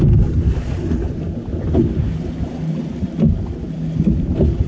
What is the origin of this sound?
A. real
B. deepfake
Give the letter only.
A